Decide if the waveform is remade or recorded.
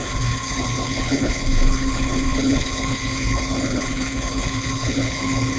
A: remade